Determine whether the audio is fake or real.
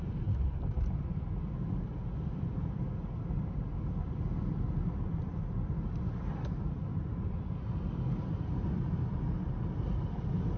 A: real